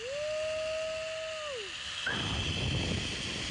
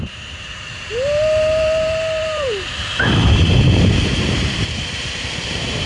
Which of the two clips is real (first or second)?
first